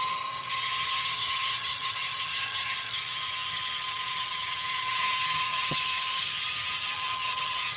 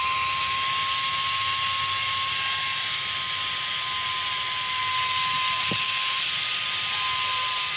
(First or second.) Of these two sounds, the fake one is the first